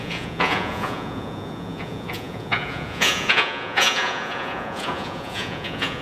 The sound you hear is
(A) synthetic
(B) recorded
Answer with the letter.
A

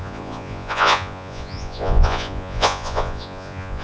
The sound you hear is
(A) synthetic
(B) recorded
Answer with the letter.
A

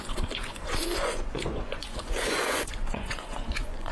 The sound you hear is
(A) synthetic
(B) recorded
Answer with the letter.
A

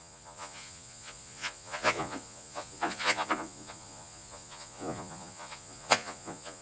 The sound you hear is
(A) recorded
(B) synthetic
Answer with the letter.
B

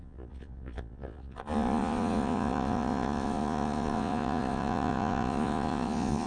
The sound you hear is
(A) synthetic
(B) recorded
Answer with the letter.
A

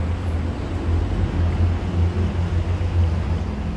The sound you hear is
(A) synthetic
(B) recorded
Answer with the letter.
B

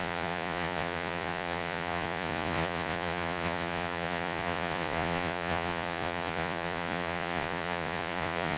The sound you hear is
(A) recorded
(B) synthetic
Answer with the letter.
B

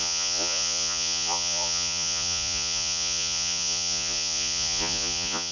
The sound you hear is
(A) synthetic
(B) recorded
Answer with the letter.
A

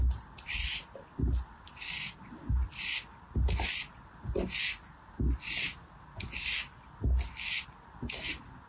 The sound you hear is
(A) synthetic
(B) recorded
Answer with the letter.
B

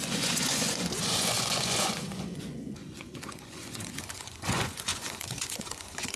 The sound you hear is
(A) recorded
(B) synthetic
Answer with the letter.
B